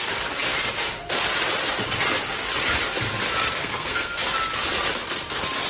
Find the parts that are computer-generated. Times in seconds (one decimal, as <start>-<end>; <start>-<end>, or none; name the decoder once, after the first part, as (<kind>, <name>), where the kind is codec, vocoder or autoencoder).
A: 3.6-4.2 (codec, SNAC)